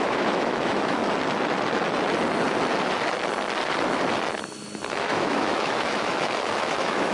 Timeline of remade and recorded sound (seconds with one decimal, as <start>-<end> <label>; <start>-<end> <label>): 0.0-1.0 remade; 1.0-4.9 recorded; 4.9-7.1 remade

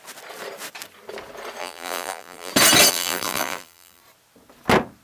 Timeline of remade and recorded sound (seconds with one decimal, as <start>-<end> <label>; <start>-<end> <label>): 0.0-1.6 recorded; 1.6-2.5 remade; 2.5-2.9 recorded; 2.9-4.0 remade; 4.0-5.0 recorded

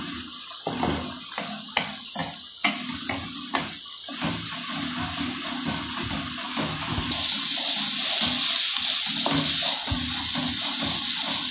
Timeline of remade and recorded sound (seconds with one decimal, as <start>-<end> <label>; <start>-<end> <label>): 0.0-11.5 recorded

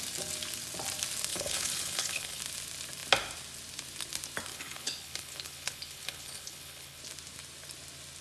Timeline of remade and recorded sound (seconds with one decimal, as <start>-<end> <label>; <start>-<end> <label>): 0.0-1.3 recorded; 1.3-2.4 remade; 2.4-4.5 recorded; 4.5-7.0 remade; 7.0-8.2 recorded

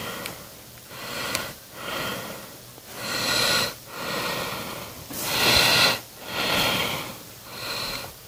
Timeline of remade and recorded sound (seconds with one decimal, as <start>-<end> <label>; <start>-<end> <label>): 0.0-0.9 recorded; 0.9-2.1 remade; 2.1-7.1 recorded; 7.1-8.3 remade

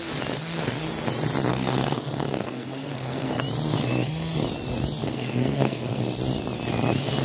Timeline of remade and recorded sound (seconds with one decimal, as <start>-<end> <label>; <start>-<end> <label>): 0.0-1.5 recorded; 1.5-3.4 remade; 3.4-5.0 recorded; 5.0-6.0 remade; 6.0-7.2 recorded

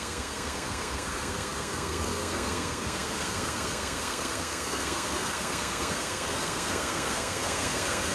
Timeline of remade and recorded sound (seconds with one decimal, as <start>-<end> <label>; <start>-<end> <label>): 0.0-8.1 remade